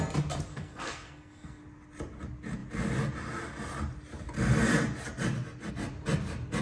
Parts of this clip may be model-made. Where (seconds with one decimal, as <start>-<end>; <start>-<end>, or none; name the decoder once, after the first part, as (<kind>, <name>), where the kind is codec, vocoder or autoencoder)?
0.5-1.6 (codec, SNAC)